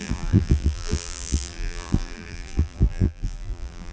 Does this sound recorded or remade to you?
remade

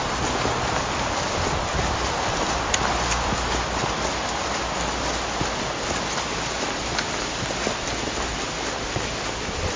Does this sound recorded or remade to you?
remade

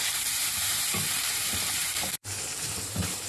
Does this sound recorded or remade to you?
remade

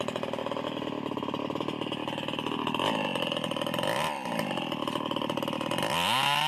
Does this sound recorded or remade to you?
recorded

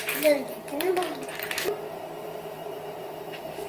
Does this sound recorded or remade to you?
remade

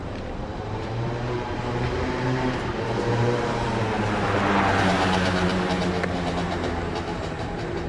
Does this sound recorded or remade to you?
remade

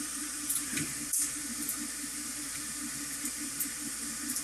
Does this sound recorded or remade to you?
remade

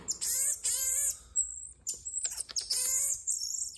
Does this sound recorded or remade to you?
remade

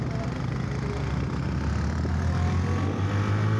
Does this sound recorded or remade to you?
recorded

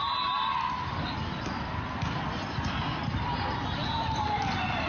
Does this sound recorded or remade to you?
remade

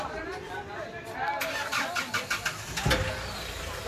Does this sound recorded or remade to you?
recorded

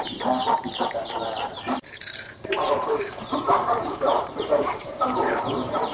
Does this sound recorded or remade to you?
remade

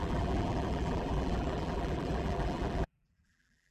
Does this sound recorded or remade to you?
remade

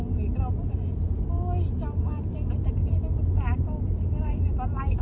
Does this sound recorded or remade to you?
recorded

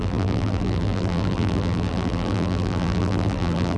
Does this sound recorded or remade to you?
remade